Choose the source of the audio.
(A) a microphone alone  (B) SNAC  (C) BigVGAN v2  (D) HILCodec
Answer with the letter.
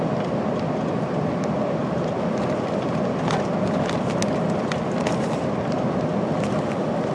A